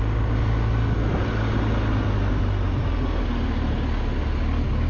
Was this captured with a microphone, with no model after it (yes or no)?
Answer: yes